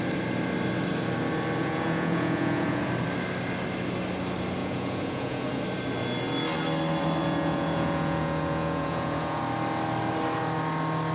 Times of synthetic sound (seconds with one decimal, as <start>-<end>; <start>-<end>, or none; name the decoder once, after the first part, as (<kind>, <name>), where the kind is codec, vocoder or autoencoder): 1.6-2.8 (vocoder, Vocos); 4.6-5.6; 7.2-9.4